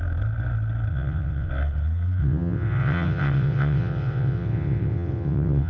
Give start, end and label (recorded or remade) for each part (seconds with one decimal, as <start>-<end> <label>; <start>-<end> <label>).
0.0-0.9 recorded; 0.9-1.5 remade; 1.5-2.2 recorded; 2.2-5.7 remade